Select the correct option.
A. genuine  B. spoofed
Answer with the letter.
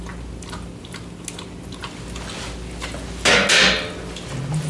A